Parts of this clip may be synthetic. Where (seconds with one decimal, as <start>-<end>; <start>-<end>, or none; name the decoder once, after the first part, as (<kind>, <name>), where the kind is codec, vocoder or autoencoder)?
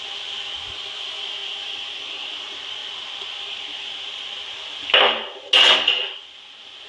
none